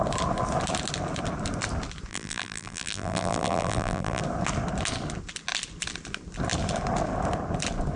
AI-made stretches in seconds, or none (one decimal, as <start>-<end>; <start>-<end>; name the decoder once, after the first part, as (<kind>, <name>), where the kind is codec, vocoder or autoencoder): 2.1-4.2 (vocoder, BigVGAN v2)